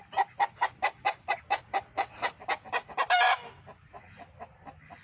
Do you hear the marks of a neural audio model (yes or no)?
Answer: no